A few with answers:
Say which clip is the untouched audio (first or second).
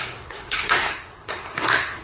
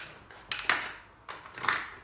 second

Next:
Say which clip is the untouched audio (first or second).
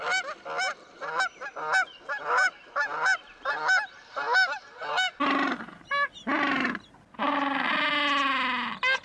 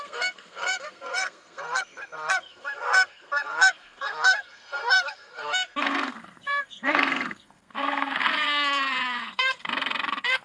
first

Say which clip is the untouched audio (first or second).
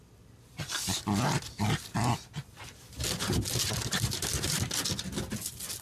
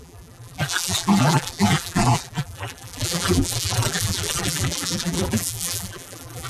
first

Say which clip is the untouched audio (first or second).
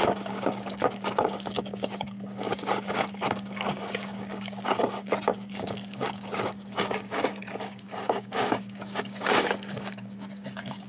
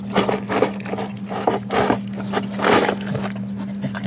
second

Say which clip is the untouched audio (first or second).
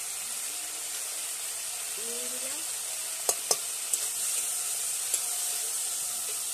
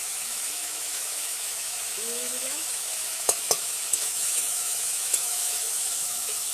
first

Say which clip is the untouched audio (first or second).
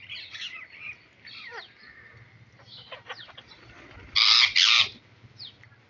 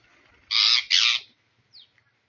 second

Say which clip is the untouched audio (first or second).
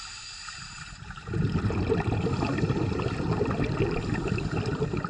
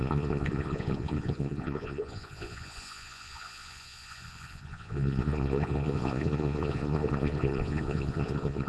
first